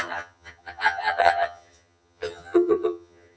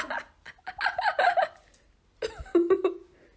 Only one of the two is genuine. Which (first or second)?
second